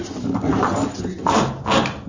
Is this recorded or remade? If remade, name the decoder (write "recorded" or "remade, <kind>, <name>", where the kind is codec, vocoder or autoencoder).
recorded